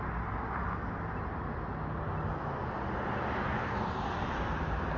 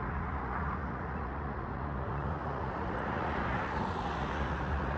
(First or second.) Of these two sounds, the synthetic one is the second